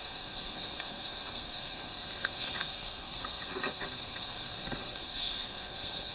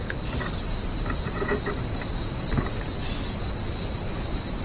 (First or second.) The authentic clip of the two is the second